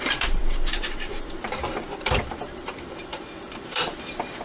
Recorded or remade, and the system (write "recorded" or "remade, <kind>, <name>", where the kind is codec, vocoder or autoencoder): remade, vocoder, BigVGAN v2